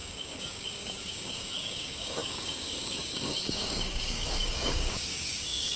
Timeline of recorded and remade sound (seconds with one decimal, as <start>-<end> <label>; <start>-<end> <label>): 0.0-5.8 remade